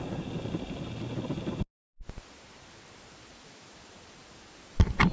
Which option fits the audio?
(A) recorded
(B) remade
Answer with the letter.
A